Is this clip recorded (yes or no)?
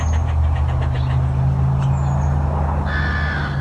yes